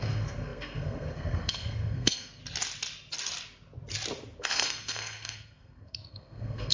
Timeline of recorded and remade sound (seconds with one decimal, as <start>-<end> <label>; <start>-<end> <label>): 0.0-2.4 remade; 2.4-4.4 recorded; 4.4-6.7 remade